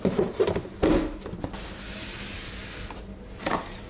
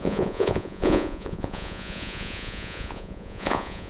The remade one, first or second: second